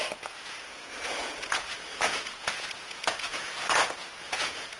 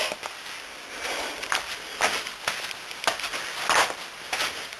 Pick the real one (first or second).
second